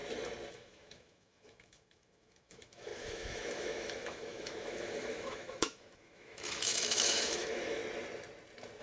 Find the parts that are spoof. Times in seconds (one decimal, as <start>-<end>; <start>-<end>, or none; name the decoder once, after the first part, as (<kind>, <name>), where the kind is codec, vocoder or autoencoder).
0.5-7.8 (autoencoder, DAC-VAE)